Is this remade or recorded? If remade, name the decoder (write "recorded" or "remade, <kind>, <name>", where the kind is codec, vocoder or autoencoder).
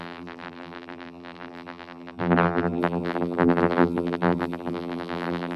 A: remade, vocoder, BigVGAN v2